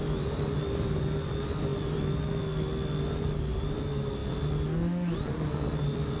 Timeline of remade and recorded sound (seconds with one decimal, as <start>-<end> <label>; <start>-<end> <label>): 0.0-6.2 recorded